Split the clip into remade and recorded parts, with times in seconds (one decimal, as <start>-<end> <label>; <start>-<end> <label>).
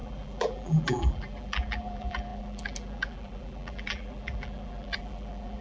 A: 0.0-5.6 remade